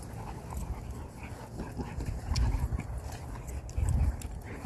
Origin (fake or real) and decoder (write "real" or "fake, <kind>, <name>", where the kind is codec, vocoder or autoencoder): real